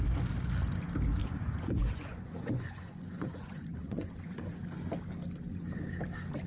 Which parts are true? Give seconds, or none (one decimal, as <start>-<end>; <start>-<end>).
0.0-1.2; 4.6-6.5